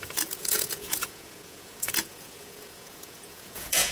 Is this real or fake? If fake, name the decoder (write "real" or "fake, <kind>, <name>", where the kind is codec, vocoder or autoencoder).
fake, vocoder, Vocos